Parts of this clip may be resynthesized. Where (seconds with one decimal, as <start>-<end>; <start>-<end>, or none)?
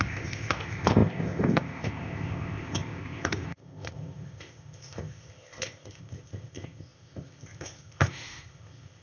0.0-9.0